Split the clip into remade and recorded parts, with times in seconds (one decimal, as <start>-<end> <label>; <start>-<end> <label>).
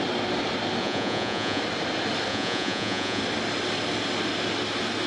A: 0.0-0.8 recorded; 0.8-1.6 remade; 1.6-2.3 recorded; 2.3-3.2 remade; 3.2-5.1 recorded